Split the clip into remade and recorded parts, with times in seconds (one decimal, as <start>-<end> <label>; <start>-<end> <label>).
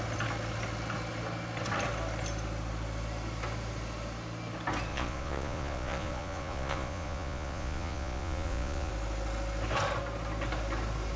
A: 0.0-4.9 recorded; 4.9-8.9 remade; 8.9-11.2 recorded